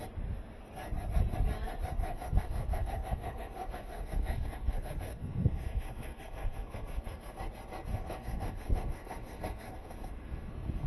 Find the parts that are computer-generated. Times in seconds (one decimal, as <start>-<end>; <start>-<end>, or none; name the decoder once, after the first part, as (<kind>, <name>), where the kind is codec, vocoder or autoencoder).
2.1-7.3 (codec, SNAC); 7.9-10.9